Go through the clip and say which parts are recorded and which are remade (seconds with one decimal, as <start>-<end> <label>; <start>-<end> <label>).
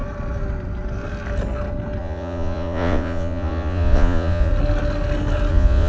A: 0.0-2.0 recorded; 2.0-4.5 remade; 4.5-5.5 recorded; 5.5-5.9 remade